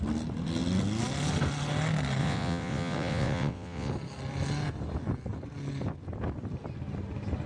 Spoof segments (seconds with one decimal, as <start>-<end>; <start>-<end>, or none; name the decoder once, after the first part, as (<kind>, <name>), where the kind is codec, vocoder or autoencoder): 2.2-3.9 (vocoder, WaveNeXt)

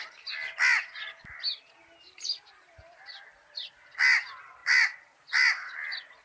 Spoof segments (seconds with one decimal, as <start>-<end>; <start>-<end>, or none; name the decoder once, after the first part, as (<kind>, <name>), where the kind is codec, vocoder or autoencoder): none

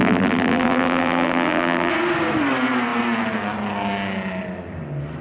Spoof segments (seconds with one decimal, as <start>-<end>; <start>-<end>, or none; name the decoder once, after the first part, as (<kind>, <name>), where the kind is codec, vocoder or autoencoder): 0.0-1.9 (vocoder, BigVGAN v2)

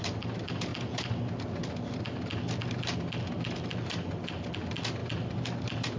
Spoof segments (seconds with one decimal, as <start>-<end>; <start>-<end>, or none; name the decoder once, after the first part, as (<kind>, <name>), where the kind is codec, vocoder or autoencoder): none